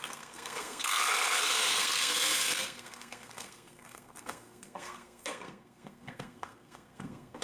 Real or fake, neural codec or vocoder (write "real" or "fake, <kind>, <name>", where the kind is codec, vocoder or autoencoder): fake, codec, SNAC